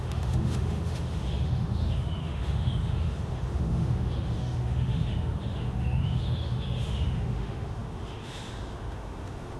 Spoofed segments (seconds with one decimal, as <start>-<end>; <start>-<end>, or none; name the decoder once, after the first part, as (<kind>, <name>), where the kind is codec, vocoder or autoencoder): 0.0-9.6 (autoencoder, DAC-VAE)